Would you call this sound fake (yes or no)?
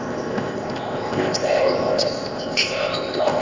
yes